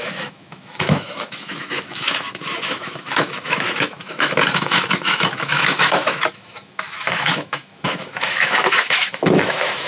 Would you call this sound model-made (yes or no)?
yes